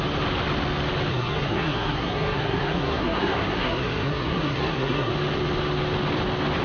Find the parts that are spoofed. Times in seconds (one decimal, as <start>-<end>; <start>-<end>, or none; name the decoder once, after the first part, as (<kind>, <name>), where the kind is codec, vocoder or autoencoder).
1.1-5.1 (codec, SNAC)